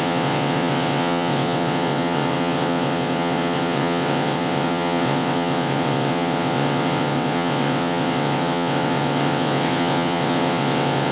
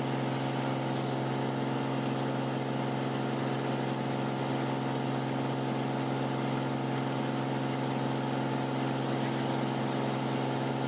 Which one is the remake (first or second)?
first